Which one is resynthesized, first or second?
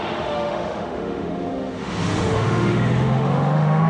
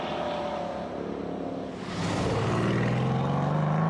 first